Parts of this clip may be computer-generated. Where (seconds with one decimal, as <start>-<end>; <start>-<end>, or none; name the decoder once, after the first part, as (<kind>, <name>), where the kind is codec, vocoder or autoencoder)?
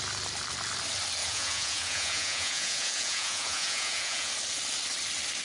1.2-4.3 (vocoder, Vocos)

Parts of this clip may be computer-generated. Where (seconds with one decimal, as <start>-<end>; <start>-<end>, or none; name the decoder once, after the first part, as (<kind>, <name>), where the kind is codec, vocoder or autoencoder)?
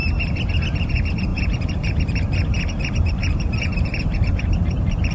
0.6-5.1 (vocoder, BigVGAN v2)